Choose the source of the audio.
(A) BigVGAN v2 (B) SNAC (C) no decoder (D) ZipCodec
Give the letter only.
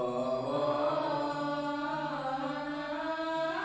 C